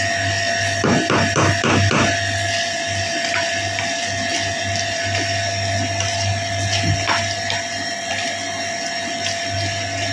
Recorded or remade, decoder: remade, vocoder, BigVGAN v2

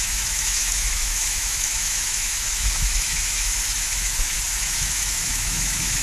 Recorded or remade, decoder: remade, autoencoder, DAC-VAE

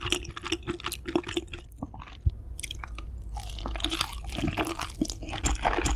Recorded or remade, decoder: recorded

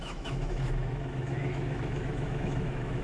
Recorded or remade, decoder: remade, autoencoder, DAC-VAE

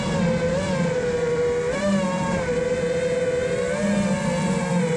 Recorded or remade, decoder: recorded